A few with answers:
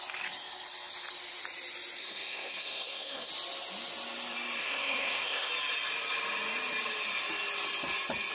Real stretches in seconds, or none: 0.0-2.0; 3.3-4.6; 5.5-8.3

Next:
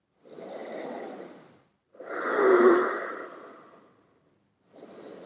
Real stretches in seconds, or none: 0.0-0.6; 3.8-5.3

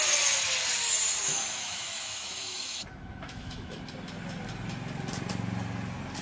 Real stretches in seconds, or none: 0.0-1.3; 3.8-6.2

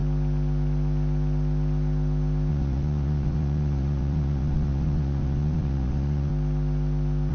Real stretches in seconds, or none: 0.0-2.5; 6.3-7.3

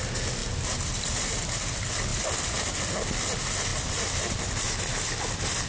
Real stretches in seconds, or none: 0.0-0.4; 1.7-2.1; 2.6-3.7; 4.4-5.7

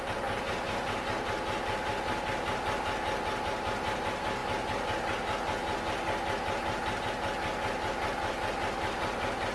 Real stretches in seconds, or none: 0.0-9.5

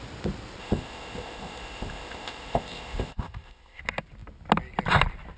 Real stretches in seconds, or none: 0.0-0.6; 3.8-5.4

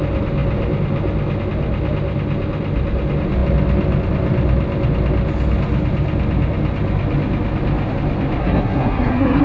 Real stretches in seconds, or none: 0.0-8.4